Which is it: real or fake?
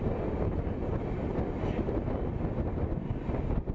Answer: real